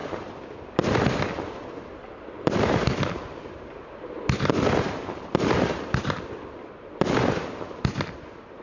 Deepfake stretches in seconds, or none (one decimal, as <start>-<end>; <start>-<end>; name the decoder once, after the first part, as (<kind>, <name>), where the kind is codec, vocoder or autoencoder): none